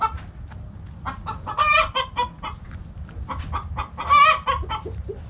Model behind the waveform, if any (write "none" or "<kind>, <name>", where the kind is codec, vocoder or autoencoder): none